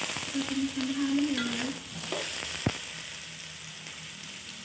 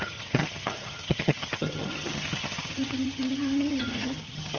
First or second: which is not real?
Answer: second